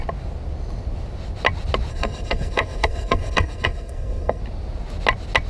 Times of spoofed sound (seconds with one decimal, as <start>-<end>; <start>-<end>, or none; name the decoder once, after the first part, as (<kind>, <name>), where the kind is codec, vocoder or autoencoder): 1.9-4.4 (codec, SNAC)